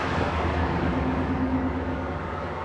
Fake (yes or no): yes